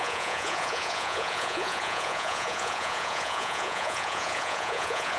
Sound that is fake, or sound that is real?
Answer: fake